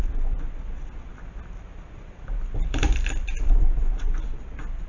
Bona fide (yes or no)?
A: no